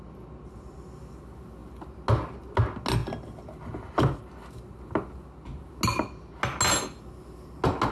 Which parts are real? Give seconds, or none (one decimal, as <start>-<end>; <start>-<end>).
0.0-7.9